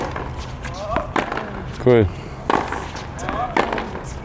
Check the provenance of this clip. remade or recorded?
recorded